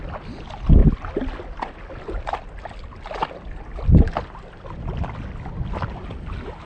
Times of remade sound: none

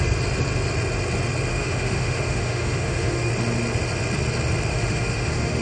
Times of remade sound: 1.5-3.3 (autoencoder, DAC-VAE); 4.7-5.6

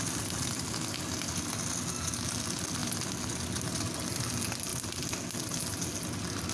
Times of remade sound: none

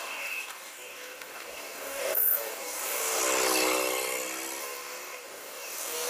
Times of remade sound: 0.0-3.2 (codec, DAC); 4.6-6.1

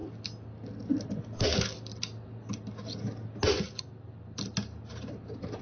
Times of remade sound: none

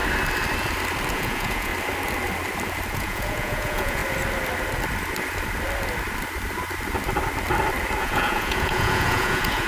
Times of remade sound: 1.1-1.7 (vocoder, Vocos); 2.9-4.0; 8.0-9.7